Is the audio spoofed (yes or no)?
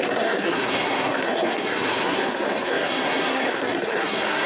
yes